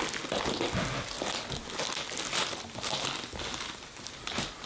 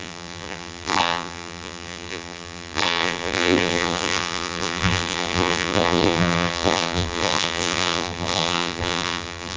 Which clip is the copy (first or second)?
second